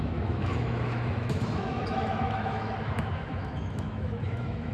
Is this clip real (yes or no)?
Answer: no